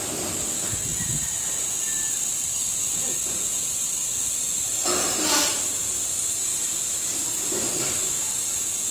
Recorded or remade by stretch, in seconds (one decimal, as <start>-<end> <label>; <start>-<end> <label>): 0.0-0.9 recorded; 0.9-4.8 remade; 4.8-6.5 recorded; 6.5-7.8 remade; 7.8-8.9 recorded